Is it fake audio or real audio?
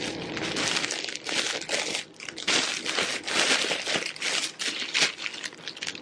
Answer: real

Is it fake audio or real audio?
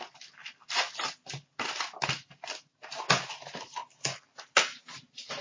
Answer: real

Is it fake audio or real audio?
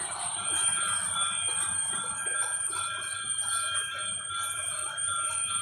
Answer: fake